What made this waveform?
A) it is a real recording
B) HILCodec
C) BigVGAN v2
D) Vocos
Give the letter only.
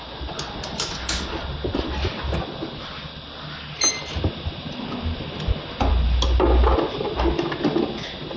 A